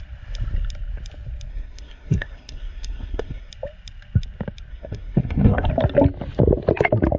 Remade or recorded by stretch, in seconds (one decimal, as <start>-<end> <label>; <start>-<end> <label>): 0.0-1.5 recorded; 1.5-3.5 remade; 3.5-4.7 recorded; 4.7-5.7 remade; 5.7-7.2 recorded